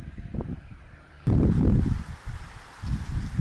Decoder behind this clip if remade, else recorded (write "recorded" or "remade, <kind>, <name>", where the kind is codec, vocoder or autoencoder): remade, vocoder, BigVGAN v2